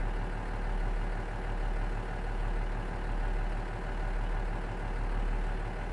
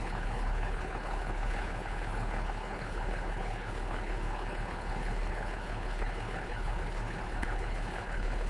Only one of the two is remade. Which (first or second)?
second